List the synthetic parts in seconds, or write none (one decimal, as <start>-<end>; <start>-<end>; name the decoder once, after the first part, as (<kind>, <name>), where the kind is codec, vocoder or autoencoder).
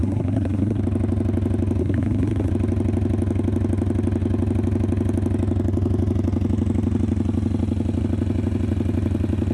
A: 0.0-0.8 (codec, SNAC); 1.8-2.5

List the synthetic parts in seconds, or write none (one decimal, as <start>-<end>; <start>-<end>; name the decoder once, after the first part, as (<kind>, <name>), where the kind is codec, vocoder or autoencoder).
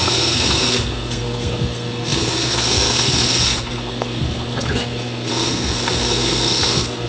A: 0.0-7.1 (codec, SNAC)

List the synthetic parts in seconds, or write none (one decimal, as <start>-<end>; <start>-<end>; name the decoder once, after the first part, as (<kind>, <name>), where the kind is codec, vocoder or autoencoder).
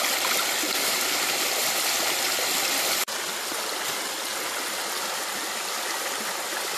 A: none